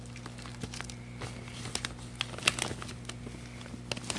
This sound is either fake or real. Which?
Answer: real